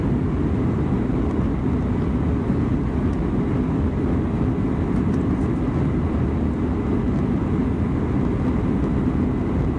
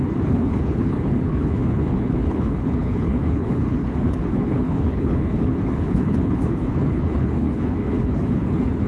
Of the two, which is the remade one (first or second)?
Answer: second